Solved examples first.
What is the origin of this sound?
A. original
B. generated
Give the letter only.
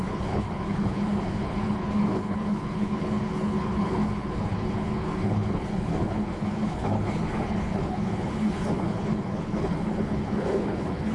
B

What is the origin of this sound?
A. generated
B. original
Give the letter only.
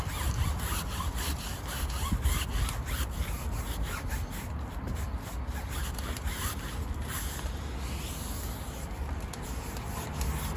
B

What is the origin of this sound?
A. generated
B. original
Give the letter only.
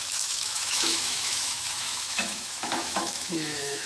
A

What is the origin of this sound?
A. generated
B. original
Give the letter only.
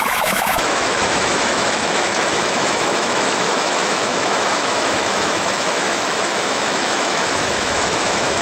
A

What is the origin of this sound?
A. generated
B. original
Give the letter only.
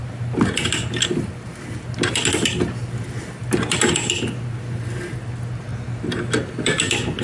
B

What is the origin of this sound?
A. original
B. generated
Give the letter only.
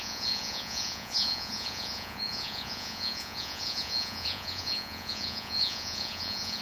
B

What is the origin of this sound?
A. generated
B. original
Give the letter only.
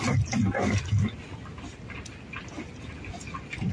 B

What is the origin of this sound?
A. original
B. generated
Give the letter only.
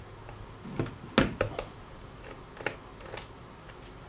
A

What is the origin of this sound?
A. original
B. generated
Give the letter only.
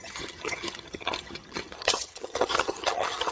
B